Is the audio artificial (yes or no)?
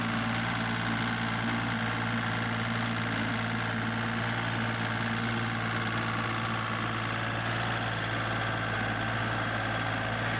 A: no